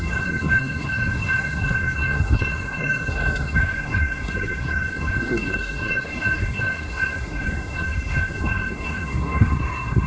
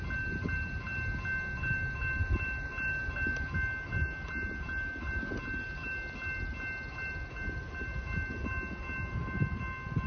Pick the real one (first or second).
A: second